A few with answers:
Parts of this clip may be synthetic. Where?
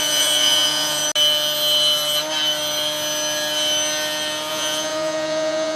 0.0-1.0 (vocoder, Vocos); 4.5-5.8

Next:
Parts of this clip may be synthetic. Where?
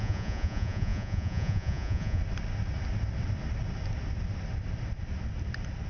0.0-2.2 (vocoder, Vocos)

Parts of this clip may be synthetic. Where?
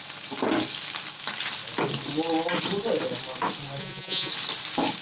3.8-4.3 (vocoder, Vocos)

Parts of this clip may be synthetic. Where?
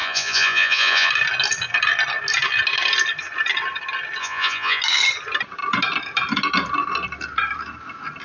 0.0-1.1 (vocoder, Vocos); 4.2-4.8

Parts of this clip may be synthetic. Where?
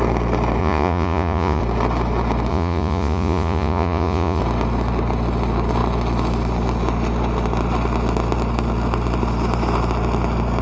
0.6-1.6 (vocoder, Vocos); 2.5-4.4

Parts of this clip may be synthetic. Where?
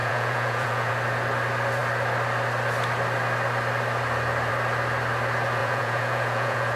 0.0-0.9 (vocoder, Vocos); 5.6-6.8